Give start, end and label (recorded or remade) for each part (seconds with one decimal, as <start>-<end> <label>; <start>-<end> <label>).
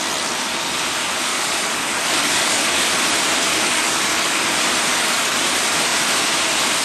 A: 0.0-1.3 recorded; 1.3-2.9 remade; 2.9-3.5 recorded; 3.5-4.5 remade; 4.5-4.9 recorded; 4.9-5.4 remade; 5.4-6.8 recorded